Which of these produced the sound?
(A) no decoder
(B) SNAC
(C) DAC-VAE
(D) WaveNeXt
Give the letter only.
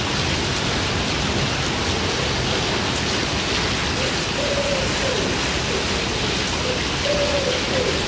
A